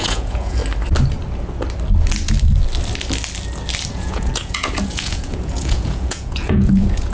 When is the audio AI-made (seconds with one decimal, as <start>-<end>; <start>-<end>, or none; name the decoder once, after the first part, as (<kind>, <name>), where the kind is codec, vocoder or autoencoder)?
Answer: 0.0-0.6 (vocoder, Vocos); 3.9-7.1